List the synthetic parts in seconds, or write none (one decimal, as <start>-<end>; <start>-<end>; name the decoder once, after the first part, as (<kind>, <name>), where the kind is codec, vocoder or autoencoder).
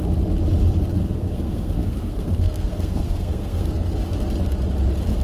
1.0-4.1 (codec, SNAC)